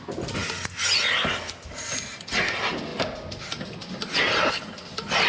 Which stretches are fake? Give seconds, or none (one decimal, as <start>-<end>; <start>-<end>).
none